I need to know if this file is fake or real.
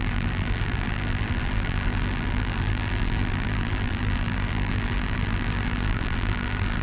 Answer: fake